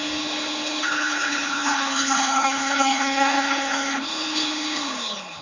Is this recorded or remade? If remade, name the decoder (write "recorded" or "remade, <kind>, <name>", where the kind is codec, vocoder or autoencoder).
remade, codec, HILCodec